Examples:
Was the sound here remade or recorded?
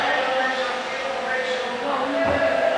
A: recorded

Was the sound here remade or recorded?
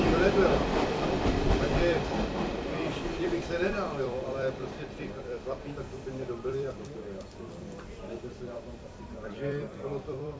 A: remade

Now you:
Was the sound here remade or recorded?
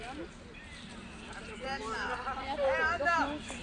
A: remade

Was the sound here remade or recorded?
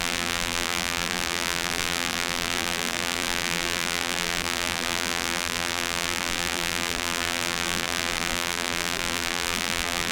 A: remade